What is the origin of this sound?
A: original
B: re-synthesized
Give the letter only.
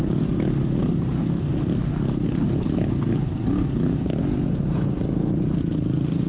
A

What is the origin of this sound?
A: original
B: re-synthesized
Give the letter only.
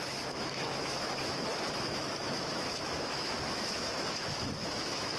B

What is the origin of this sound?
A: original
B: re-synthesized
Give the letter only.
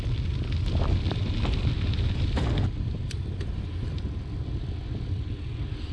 A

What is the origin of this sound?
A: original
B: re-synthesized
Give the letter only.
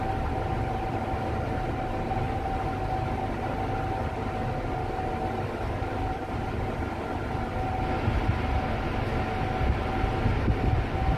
A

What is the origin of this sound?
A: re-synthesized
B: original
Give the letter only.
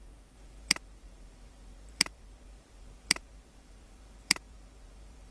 A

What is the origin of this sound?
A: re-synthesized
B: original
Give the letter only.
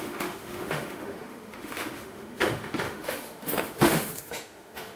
A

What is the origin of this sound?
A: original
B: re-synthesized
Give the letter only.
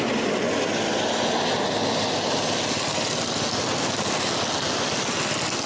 A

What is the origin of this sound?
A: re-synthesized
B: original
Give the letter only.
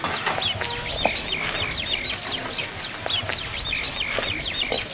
B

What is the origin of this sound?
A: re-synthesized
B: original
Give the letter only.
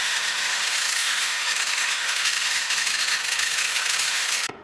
A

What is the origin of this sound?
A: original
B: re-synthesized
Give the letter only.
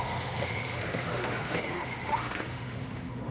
B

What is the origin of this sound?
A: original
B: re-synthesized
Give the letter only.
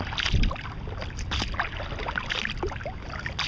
A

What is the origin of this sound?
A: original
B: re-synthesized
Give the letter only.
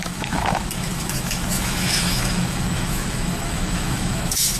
B